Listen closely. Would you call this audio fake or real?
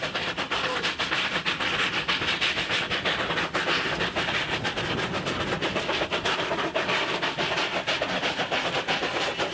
real